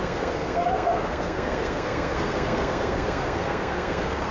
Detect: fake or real fake